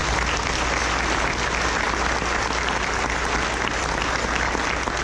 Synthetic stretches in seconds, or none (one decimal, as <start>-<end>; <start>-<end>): none